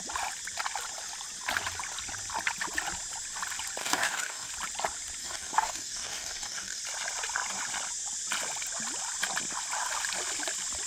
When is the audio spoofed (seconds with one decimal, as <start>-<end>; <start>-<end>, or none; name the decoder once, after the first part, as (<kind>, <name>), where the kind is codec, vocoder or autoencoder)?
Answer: 3.8-4.5 (codec, DAC); 5.2-6.8